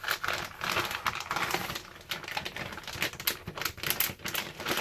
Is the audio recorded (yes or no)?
yes